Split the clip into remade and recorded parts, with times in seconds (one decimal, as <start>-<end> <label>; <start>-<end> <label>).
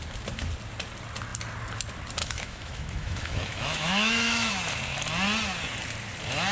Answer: 0.0-2.2 recorded; 2.2-4.5 remade; 4.5-6.5 recorded